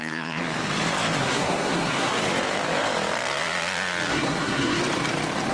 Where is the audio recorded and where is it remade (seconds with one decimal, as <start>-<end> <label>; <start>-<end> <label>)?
0.0-0.4 remade; 0.4-1.2 recorded; 1.2-2.1 remade; 2.1-4.1 recorded; 4.1-4.8 remade; 4.8-5.5 recorded